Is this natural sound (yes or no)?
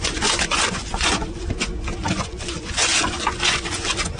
no